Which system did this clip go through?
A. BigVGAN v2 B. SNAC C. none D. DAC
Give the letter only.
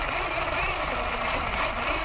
C